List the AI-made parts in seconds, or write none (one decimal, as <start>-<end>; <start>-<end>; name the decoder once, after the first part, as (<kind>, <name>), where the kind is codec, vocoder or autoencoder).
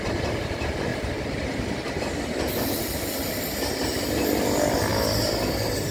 none